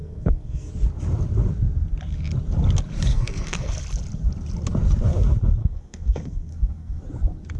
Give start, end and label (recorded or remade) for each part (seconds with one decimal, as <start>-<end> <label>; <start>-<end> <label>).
0.0-0.7 remade; 0.7-3.1 recorded; 3.1-3.7 remade; 3.7-5.6 recorded; 5.6-7.0 remade; 7.0-7.6 recorded